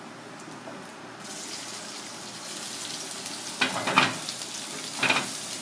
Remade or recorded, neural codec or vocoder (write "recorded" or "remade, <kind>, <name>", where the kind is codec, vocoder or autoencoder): recorded